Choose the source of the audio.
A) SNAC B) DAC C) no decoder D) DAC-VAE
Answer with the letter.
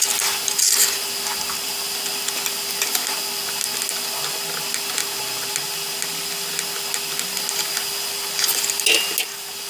C